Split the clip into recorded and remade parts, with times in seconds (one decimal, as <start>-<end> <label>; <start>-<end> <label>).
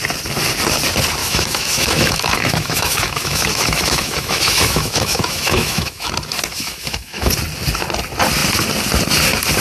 0.0-1.2 recorded; 1.2-6.1 remade; 6.1-6.5 recorded; 6.5-7.3 remade; 7.3-9.6 recorded